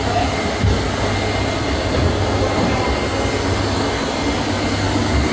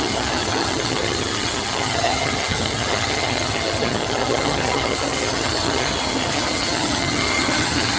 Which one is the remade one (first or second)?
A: second